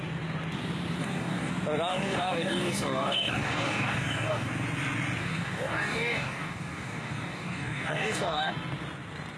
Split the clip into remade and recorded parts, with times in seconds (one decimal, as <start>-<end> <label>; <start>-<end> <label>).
0.0-1.0 recorded; 1.0-1.5 remade; 1.5-1.9 recorded; 1.9-4.5 remade; 4.5-5.2 recorded; 5.2-8.5 remade; 8.5-9.4 recorded